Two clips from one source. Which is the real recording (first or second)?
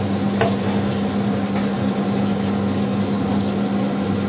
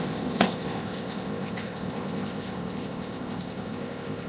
first